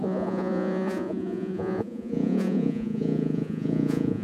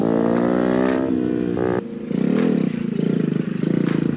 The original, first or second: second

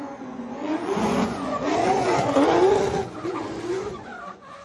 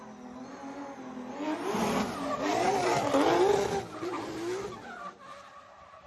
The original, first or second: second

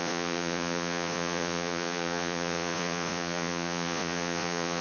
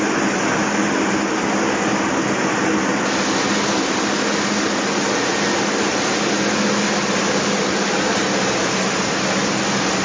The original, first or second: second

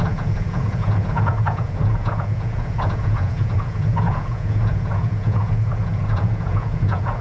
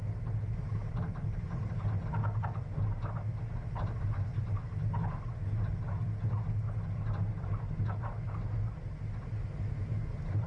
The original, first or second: second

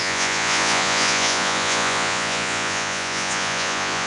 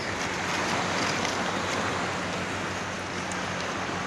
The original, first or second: second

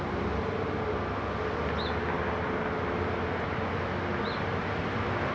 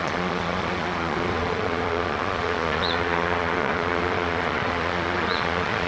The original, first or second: first